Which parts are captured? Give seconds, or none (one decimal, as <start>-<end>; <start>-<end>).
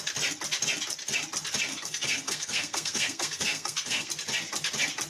0.0-1.7; 4.1-5.1